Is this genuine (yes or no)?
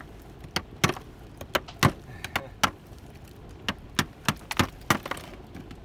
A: yes